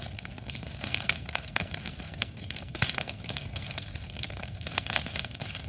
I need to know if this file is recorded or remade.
remade